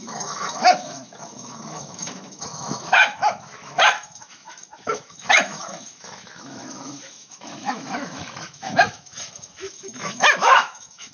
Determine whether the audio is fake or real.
fake